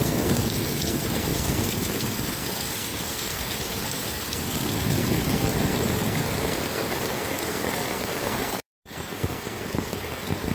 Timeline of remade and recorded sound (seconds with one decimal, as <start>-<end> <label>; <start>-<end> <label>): 0.0-10.5 remade